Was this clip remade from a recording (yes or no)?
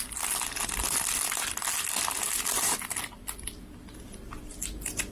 no